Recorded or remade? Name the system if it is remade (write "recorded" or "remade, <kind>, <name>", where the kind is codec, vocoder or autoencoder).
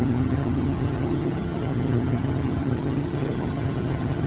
remade, vocoder, HiFi-GAN